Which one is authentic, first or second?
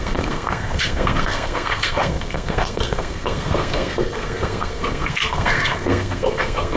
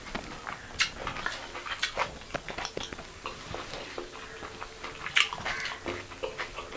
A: second